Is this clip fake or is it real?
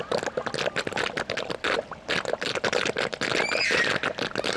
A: real